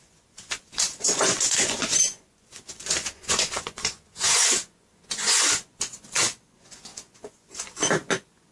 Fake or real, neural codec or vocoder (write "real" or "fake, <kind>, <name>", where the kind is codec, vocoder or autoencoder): fake, vocoder, Vocos